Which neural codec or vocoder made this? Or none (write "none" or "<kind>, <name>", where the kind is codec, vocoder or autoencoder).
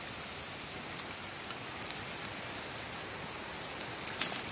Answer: none